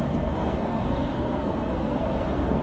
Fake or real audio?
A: fake